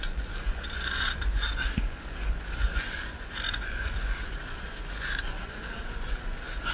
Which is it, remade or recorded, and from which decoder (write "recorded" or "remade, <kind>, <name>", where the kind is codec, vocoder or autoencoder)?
remade, vocoder, Vocos